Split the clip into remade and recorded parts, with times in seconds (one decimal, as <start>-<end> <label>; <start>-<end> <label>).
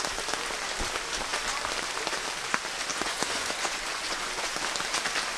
0.0-2.9 recorded; 2.9-4.5 remade; 4.5-5.4 recorded